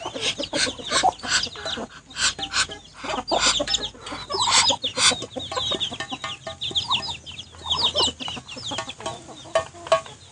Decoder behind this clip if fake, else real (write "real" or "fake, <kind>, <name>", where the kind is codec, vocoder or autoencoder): real